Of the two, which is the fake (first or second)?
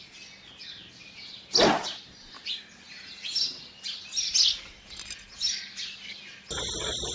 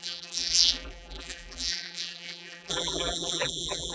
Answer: second